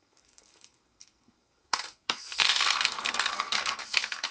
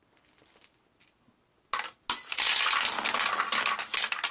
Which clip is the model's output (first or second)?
first